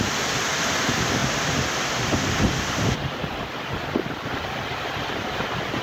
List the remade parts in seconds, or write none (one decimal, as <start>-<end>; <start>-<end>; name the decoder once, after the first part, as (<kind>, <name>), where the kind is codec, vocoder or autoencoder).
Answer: 0.0-1.2 (vocoder, BigVGAN v2); 2.8-3.2; 4.9-5.8